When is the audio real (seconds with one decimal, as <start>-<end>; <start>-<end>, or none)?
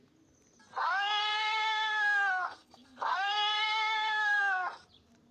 0.0-1.2; 4.4-5.3